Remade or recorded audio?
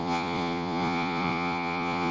remade